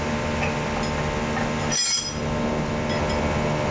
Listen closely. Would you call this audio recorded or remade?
recorded